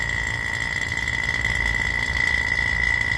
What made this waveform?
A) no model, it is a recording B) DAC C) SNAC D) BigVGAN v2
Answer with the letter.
A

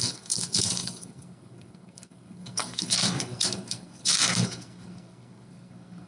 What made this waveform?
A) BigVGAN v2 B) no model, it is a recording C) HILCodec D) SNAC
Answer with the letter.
D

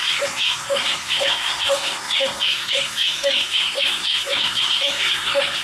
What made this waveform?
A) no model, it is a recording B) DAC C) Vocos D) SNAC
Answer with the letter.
D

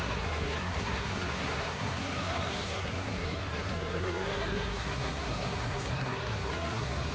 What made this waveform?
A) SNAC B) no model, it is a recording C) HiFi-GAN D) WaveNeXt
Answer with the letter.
A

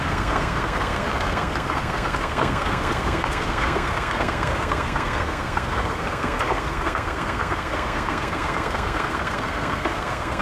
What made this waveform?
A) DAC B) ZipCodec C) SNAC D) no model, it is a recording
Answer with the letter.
C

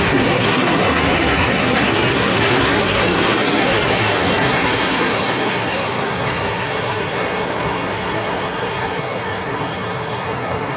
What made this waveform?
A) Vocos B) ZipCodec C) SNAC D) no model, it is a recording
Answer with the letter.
C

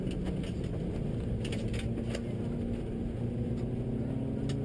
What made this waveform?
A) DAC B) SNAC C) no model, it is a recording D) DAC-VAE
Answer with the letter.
C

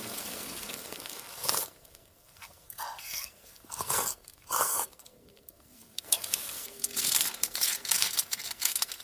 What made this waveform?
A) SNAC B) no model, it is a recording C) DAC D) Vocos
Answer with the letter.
A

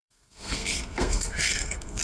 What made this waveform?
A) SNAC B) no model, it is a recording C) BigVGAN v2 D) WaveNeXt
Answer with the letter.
A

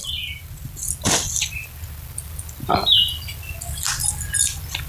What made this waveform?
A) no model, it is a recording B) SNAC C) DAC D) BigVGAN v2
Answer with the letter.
A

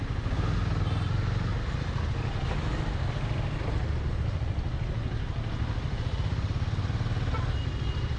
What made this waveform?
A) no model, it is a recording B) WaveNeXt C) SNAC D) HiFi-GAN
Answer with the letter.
A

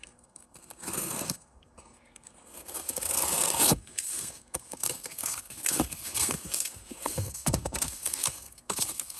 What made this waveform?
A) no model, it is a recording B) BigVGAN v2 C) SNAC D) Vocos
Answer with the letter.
C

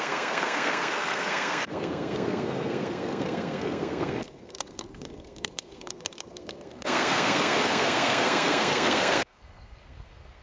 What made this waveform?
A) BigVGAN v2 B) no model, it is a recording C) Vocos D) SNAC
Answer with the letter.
D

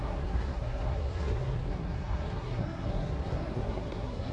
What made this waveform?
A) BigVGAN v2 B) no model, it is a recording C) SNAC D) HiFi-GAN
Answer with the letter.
C